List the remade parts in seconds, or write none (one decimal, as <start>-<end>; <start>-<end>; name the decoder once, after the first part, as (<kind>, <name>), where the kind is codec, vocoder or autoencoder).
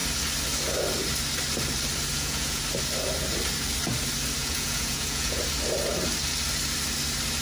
2.1-2.6 (vocoder, Vocos); 4.4-5.4